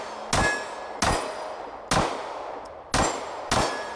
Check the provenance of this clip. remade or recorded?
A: recorded